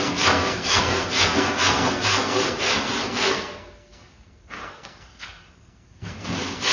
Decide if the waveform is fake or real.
fake